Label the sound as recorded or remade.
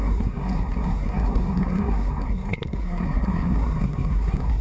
remade